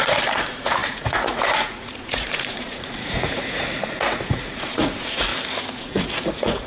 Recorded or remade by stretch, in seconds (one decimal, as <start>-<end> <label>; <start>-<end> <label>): 0.0-5.3 remade; 5.3-5.8 recorded; 5.8-6.7 remade